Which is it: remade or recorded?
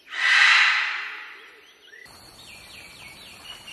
recorded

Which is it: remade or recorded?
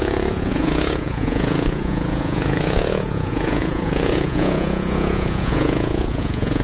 remade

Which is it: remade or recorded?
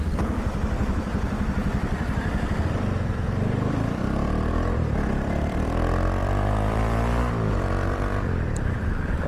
remade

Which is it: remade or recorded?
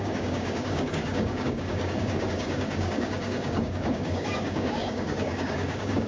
remade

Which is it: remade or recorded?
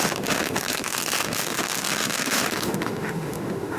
remade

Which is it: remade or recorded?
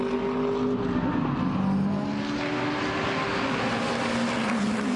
recorded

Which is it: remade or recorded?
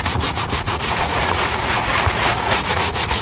remade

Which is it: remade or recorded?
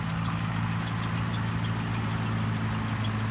recorded